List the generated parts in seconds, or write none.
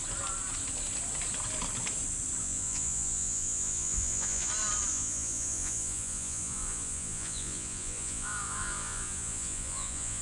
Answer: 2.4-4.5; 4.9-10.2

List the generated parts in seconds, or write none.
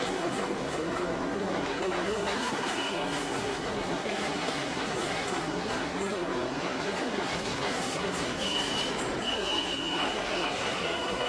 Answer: 0.0-8.7; 9.2-11.3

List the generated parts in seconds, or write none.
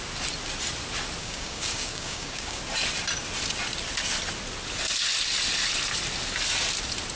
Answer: 1.2-2.6